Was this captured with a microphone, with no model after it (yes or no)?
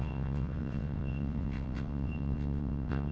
no